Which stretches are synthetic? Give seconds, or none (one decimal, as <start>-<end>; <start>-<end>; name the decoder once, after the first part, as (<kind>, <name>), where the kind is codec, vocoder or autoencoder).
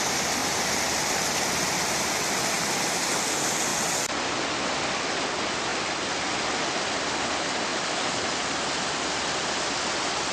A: 3.7-5.0 (vocoder, BigVGAN v2)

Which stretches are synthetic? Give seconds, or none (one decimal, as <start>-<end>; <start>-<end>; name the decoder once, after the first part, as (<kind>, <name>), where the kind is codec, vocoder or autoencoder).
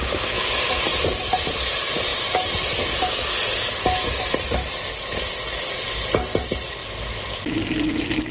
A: 0.9-1.5 (vocoder, BigVGAN v2)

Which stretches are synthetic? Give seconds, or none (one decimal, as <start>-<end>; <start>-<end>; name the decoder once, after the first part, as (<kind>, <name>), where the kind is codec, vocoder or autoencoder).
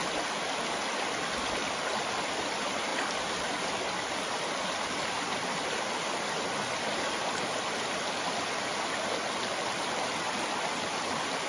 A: none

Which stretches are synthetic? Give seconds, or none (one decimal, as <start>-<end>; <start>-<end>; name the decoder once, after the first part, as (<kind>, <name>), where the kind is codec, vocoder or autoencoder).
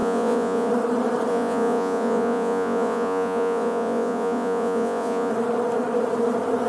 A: 0.0-0.7 (vocoder, Vocos); 1.3-5.3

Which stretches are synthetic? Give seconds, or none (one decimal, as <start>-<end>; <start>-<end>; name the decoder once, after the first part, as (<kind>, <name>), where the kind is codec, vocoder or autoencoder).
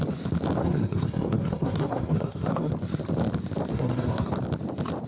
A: 0.6-2.7 (codec, SNAC); 3.7-4.3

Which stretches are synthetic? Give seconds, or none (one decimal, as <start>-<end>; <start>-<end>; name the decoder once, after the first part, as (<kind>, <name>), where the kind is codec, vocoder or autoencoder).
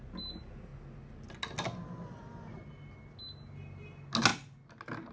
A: none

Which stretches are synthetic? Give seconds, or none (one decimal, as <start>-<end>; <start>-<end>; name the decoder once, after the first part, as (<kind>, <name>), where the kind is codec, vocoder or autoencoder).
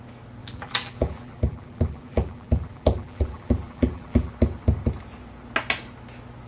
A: 0.4-4.3 (vocoder, BigVGAN v2)